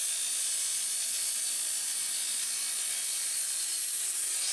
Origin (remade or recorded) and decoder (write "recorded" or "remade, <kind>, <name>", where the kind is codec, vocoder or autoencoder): recorded